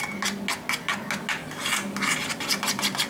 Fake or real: real